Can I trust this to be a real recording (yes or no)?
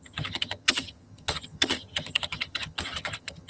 no